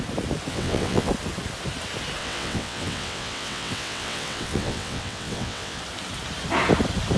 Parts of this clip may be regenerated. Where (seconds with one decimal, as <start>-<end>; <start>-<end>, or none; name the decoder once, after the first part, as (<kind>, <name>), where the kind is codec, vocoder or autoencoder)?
0.5-1.1 (vocoder, WaveNeXt); 2.2-5.8

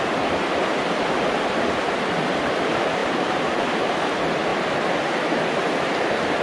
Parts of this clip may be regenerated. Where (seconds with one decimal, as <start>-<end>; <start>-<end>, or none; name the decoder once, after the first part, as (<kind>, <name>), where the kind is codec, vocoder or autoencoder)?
none

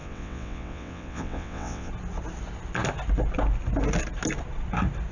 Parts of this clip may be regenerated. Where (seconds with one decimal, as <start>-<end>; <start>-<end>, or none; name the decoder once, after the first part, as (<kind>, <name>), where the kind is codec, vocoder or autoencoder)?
0.0-1.9 (vocoder, WaveNeXt)

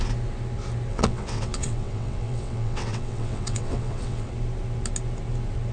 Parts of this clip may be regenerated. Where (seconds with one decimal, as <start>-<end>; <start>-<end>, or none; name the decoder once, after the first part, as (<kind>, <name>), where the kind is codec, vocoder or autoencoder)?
0.9-4.3 (vocoder, WaveNeXt)